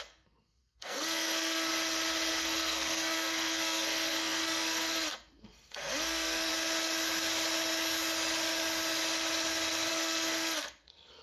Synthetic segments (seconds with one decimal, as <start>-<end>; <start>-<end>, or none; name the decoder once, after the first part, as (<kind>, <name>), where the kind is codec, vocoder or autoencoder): 0.0-1.7 (codec, SNAC); 2.3-6.5; 9.9-11.2